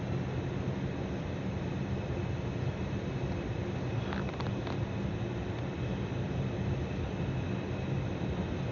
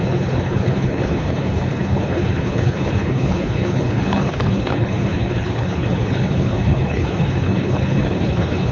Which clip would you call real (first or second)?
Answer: first